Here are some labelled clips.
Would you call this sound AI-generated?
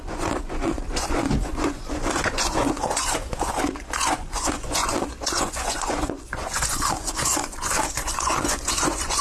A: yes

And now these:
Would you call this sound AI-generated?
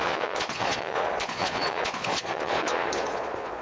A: yes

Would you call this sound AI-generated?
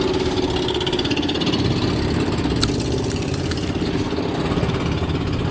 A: no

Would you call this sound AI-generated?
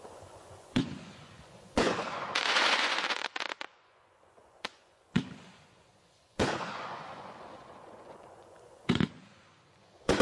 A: yes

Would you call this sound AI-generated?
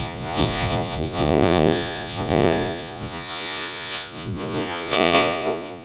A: yes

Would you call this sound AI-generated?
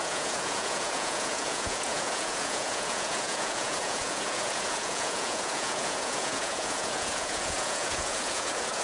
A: yes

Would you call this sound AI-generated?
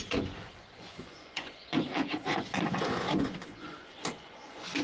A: yes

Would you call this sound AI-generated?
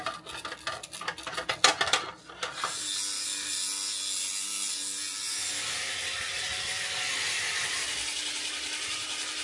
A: no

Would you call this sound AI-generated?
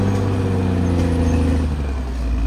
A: no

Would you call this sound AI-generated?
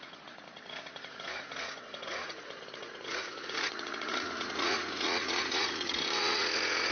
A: yes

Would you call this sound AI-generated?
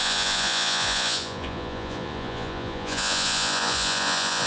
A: yes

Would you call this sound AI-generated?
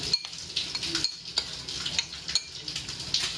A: no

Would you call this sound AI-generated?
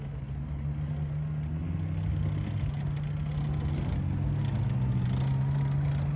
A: no